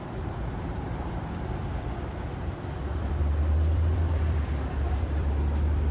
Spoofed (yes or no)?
yes